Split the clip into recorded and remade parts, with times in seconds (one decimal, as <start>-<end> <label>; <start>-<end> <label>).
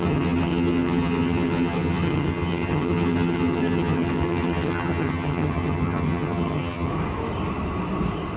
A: 0.0-6.9 remade; 6.9-8.4 recorded